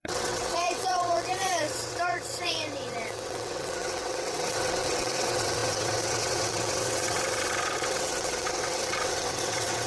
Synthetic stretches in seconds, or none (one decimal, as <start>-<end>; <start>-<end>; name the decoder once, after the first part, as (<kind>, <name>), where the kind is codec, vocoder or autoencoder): 0.0-9.9 (vocoder, WaveNeXt)